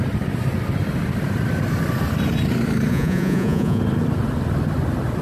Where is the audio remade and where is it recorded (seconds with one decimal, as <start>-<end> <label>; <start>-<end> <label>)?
0.0-2.9 recorded; 2.9-3.8 remade; 3.8-5.2 recorded

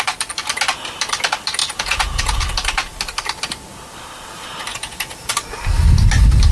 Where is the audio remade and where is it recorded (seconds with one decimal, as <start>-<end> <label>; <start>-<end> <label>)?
0.0-1.6 recorded; 1.6-2.4 remade; 2.4-4.7 recorded; 4.7-5.3 remade; 5.3-6.5 recorded

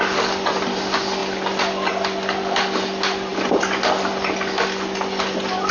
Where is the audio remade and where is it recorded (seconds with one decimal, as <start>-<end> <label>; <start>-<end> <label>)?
0.0-5.7 recorded

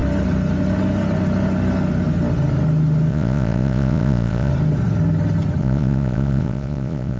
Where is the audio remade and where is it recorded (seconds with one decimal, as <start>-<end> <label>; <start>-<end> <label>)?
0.0-3.1 recorded; 3.1-4.5 remade; 4.5-5.6 recorded; 5.6-7.2 remade

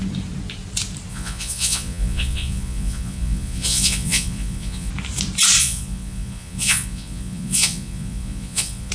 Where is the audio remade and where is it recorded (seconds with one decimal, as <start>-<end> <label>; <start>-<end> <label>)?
0.0-1.1 recorded; 1.1-4.9 remade; 4.9-5.6 recorded; 5.6-8.9 remade

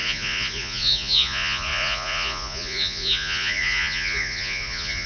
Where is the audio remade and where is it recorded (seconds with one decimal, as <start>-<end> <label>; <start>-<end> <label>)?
0.0-5.1 remade

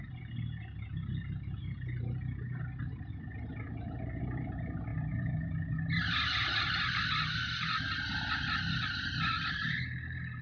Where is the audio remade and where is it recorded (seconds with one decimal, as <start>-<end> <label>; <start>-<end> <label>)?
0.0-10.4 recorded

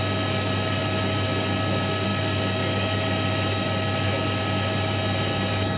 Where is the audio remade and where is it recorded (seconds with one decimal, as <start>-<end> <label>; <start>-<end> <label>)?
0.0-5.8 recorded